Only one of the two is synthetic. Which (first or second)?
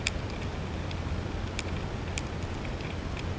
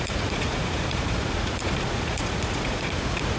second